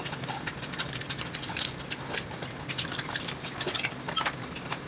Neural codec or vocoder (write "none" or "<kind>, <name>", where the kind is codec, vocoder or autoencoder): none